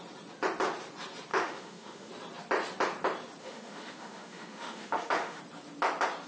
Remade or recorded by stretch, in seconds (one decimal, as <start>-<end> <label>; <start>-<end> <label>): 0.0-1.3 recorded; 1.3-2.1 remade; 2.1-3.4 recorded; 3.4-5.4 remade; 5.4-6.3 recorded

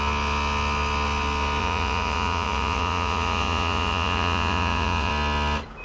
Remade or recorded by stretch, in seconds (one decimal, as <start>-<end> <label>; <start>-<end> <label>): 0.0-1.6 recorded; 1.6-5.1 remade; 5.1-5.8 recorded